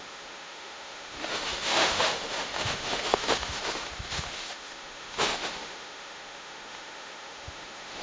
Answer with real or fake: fake